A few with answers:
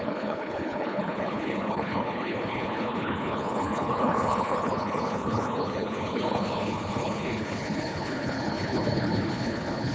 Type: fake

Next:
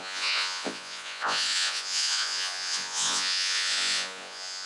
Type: fake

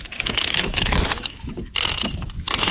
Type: fake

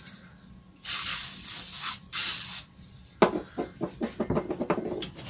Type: real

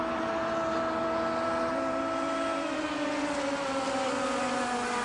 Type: real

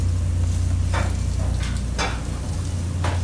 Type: real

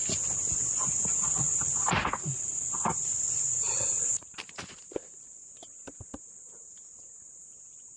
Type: real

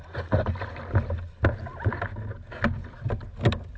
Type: real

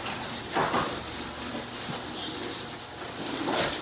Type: real